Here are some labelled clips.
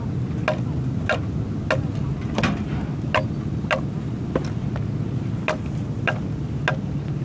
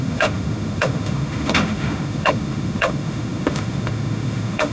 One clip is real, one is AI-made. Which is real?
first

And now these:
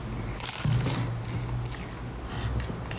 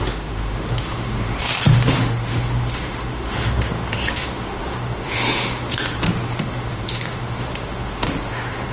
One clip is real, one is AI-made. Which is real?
first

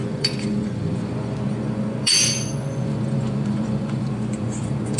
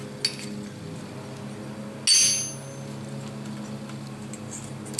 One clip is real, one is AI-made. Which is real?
second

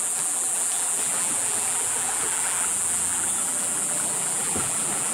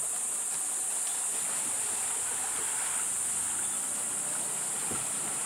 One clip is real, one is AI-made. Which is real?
second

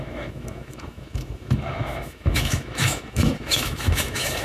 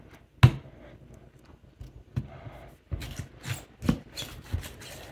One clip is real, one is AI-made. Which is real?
second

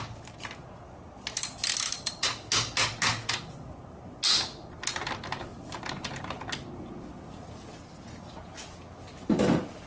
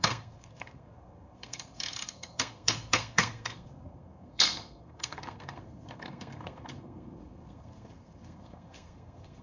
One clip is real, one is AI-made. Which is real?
first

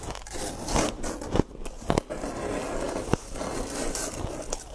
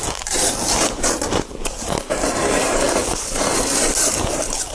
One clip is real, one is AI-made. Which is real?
first